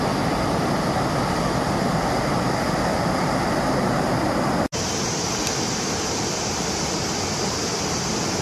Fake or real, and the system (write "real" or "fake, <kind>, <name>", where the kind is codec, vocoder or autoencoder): real